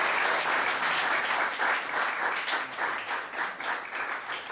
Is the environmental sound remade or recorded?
recorded